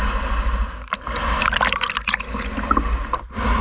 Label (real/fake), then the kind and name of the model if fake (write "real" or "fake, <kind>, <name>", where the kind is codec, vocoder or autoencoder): real